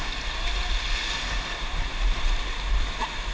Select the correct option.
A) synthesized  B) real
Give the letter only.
B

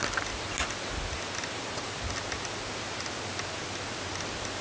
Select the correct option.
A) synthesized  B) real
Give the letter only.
B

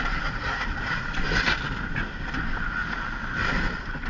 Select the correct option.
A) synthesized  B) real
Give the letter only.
B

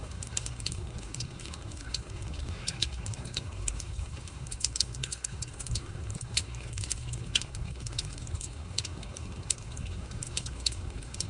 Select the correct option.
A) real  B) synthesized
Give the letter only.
B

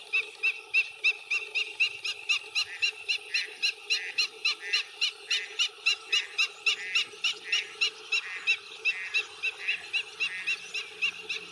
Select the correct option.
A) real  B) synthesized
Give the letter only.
A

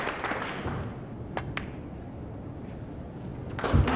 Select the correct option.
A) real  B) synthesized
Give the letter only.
A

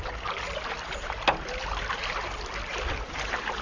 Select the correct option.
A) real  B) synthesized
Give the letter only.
A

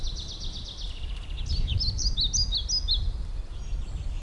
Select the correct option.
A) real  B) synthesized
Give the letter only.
A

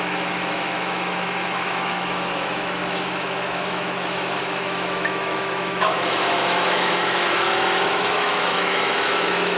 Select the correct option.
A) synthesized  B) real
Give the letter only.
A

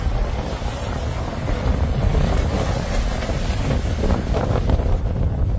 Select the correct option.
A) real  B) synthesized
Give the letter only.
A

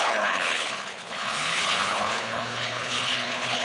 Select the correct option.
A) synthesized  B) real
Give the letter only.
A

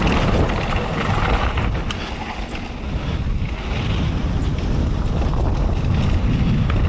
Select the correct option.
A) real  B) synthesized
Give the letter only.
A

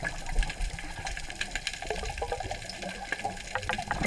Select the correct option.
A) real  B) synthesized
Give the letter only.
B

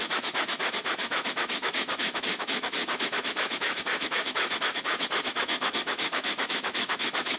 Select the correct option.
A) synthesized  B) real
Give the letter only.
A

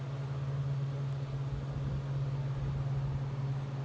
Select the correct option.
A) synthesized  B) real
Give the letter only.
B